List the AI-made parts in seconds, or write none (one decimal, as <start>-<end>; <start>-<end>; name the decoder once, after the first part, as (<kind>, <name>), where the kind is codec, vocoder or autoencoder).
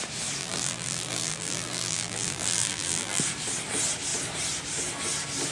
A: 0.4-3.2 (vocoder, BigVGAN v2)